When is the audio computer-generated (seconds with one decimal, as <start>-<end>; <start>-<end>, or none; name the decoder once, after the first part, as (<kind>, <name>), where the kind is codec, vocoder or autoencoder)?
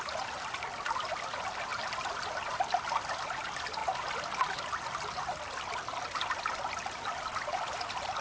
none